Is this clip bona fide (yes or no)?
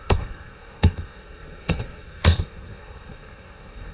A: no